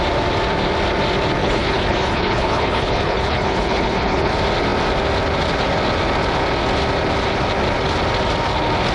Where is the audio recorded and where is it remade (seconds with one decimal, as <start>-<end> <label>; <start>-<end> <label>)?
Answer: 0.0-1.4 recorded; 1.4-4.3 remade; 4.3-8.9 recorded

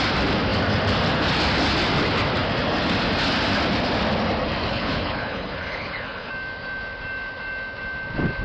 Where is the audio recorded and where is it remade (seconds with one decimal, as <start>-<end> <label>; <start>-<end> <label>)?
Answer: 0.0-4.7 recorded; 4.7-6.3 remade; 6.3-8.4 recorded

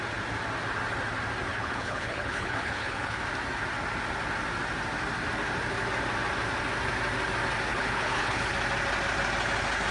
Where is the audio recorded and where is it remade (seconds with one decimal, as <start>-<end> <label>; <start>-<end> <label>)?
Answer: 0.0-1.5 recorded; 1.5-3.2 remade; 3.2-7.7 recorded; 7.7-8.5 remade; 8.5-9.9 recorded

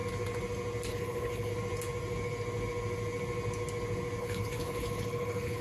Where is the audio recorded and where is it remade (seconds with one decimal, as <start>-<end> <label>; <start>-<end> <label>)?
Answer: 0.0-0.9 recorded; 0.9-1.5 remade; 1.5-4.2 recorded; 4.2-5.6 remade

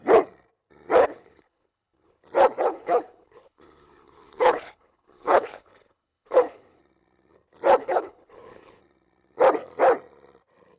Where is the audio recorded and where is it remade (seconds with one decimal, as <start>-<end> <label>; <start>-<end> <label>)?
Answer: 0.0-1.0 recorded; 1.0-2.2 remade; 2.2-2.7 recorded; 2.7-6.8 remade; 6.8-7.8 recorded; 7.8-8.8 remade; 8.8-10.8 recorded

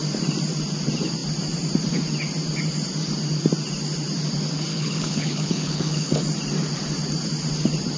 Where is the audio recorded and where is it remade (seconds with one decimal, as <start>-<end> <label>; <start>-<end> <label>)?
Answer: 0.0-4.7 recorded; 4.7-6.2 remade; 6.2-8.0 recorded

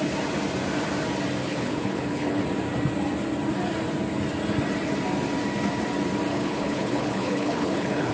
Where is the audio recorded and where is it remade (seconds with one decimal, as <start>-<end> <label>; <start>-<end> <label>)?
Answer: 0.0-1.4 recorded; 1.4-2.4 remade; 2.4-6.3 recorded; 6.3-8.1 remade

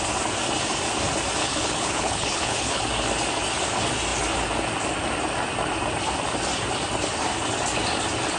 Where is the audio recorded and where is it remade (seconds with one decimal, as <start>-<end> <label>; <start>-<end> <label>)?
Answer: 0.0-1.4 recorded; 1.4-2.8 remade; 2.8-8.4 recorded